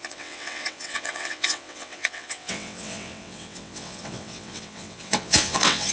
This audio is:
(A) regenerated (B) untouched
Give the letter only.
A